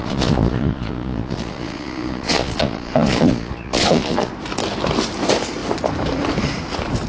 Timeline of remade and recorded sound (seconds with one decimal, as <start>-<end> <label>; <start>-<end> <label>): 0.0-4.3 remade; 4.3-7.1 recorded